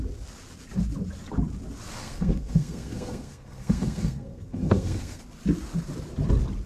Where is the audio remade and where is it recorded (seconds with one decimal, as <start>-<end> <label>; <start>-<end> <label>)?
0.0-2.0 recorded; 2.0-5.2 remade; 5.2-6.7 recorded